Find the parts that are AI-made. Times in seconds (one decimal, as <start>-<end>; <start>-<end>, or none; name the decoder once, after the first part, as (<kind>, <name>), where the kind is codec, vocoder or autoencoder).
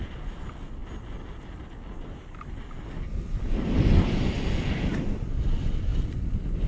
none